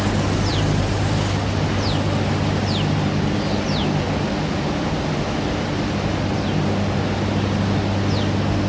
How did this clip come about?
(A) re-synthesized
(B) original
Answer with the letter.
B